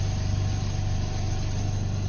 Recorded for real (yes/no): yes